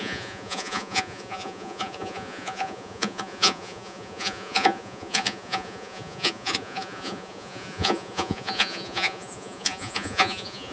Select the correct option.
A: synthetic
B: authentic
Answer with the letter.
A